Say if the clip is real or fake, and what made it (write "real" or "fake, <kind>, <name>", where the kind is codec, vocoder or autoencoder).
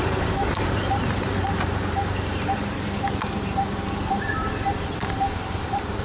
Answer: fake, vocoder, BigVGAN v2